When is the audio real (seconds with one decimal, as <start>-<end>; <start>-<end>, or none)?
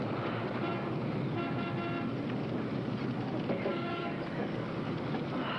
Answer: 0.0-3.7; 4.7-5.6